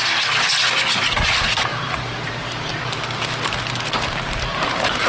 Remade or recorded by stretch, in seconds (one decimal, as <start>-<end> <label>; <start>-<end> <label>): 0.0-1.4 recorded; 1.4-2.7 remade; 2.7-4.5 recorded; 4.5-5.1 remade

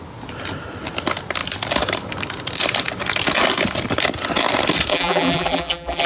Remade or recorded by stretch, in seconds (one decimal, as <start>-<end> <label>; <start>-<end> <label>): 0.0-4.9 recorded; 4.9-6.1 remade

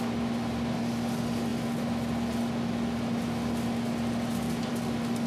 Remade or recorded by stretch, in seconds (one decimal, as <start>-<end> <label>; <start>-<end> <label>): 0.0-5.3 recorded

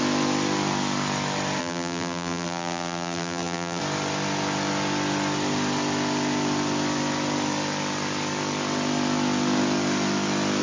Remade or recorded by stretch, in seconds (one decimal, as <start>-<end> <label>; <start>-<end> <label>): 0.0-1.6 recorded; 1.6-3.8 remade; 3.8-10.6 recorded

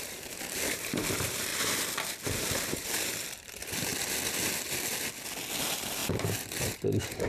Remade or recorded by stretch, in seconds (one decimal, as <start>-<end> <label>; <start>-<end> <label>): 0.0-1.5 remade; 1.5-2.2 recorded; 2.2-3.9 remade; 3.9-5.6 recorded; 5.6-7.3 remade

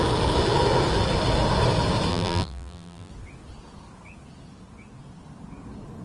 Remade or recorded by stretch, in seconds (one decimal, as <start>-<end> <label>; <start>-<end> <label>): 0.0-2.1 recorded; 2.1-3.1 remade; 3.1-6.0 recorded

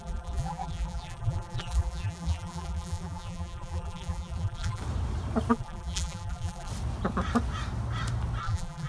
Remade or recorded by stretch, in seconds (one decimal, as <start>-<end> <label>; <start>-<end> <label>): 0.0-4.8 remade; 4.8-5.5 recorded; 5.5-6.7 remade; 6.7-8.4 recorded; 8.4-8.9 remade